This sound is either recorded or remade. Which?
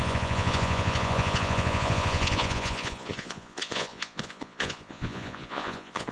remade